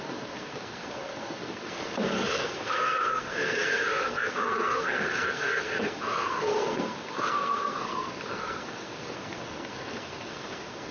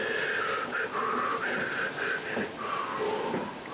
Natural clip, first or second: second